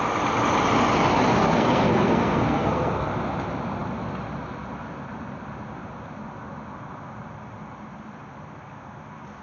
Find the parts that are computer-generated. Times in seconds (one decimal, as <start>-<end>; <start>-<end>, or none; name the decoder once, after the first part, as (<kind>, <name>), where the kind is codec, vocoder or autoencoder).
1.4-3.1 (codec, SNAC)